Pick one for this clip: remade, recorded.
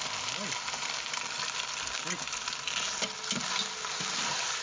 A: recorded